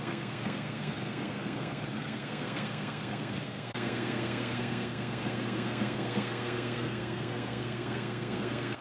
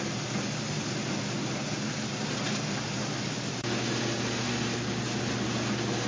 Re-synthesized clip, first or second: first